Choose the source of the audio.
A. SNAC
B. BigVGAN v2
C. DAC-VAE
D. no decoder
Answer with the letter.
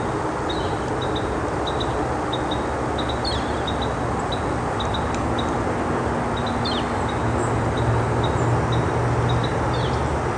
D